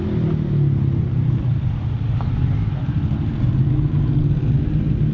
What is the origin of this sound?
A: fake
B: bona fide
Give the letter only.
B